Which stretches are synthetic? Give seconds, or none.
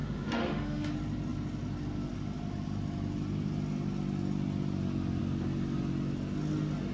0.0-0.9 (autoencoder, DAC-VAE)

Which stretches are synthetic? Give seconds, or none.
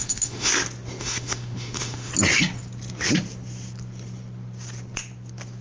0.0-0.5 (autoencoder, DAC-VAE); 1.0-2.1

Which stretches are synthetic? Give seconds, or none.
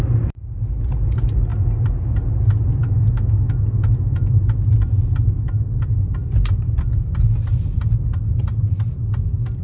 2.8-4.4 (autoencoder, DAC-VAE)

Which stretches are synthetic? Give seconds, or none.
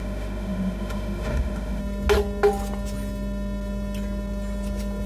0.0-1.8 (autoencoder, DAC-VAE)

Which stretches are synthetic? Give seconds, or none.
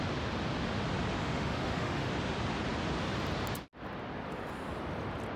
1.2-2.1 (autoencoder, DAC-VAE)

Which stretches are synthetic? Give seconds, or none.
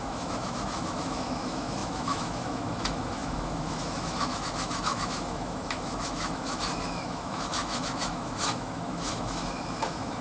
0.0-10.2 (autoencoder, DAC-VAE)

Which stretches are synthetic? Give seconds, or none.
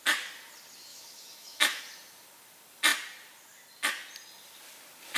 0.9-1.8 (autoencoder, DAC-VAE)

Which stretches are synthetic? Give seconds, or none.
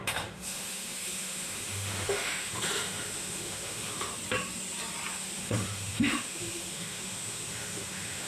0.0-4.1 (autoencoder, DAC-VAE); 5.1-8.3